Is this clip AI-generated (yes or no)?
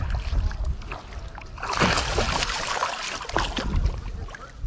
no